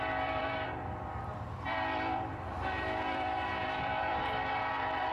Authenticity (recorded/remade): remade